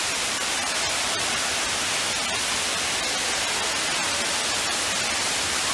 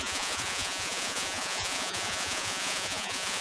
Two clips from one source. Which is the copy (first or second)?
second